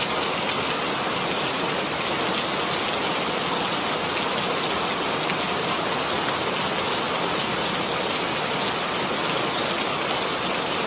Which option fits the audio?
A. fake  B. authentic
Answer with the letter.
B